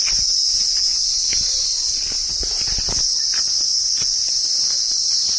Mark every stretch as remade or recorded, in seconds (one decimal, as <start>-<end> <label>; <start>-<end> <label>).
0.0-5.4 recorded